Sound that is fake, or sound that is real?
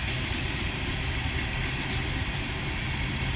fake